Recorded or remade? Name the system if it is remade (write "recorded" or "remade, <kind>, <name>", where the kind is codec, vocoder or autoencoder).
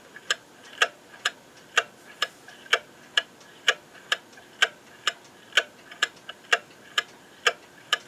recorded